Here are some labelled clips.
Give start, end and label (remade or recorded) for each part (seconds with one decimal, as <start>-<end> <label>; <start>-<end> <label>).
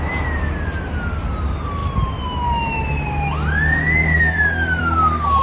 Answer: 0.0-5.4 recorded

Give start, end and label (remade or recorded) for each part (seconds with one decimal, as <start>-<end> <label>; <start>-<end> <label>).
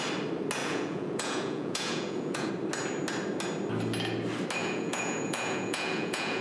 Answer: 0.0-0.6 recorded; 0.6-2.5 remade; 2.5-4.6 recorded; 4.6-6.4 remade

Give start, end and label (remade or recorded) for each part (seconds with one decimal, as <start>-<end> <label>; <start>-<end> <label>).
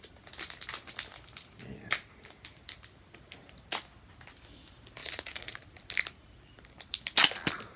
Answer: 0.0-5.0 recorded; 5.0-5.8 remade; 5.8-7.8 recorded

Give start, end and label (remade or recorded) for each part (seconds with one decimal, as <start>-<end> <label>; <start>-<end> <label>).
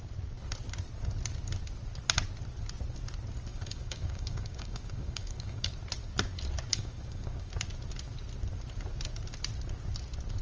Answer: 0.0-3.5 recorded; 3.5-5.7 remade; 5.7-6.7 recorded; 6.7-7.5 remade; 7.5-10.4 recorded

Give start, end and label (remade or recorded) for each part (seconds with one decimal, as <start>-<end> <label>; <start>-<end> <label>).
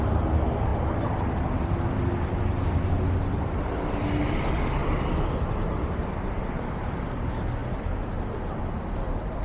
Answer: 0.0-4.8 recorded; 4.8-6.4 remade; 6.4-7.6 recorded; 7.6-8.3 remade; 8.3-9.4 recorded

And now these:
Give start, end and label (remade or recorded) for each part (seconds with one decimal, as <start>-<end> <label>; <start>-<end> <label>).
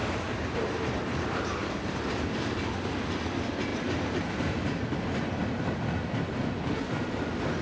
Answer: 0.0-2.1 remade; 2.1-3.7 recorded; 3.7-5.1 remade; 5.1-7.6 recorded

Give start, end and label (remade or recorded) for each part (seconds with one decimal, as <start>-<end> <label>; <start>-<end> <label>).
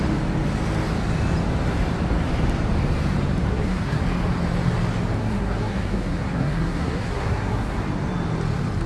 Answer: 0.0-3.5 recorded; 3.5-4.0 remade; 4.0-5.2 recorded; 5.2-7.8 remade; 7.8-8.9 recorded